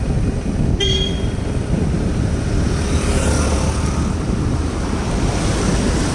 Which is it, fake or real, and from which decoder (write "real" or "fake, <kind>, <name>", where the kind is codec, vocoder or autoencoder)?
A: real